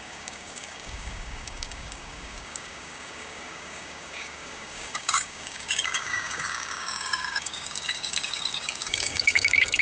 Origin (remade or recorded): remade